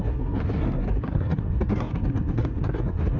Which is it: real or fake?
fake